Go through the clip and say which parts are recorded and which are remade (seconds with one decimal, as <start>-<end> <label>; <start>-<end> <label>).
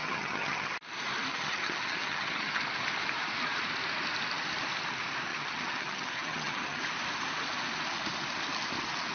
0.0-0.7 remade; 0.7-1.3 recorded; 1.3-2.6 remade; 2.6-5.3 recorded; 5.3-6.8 remade; 6.8-9.1 recorded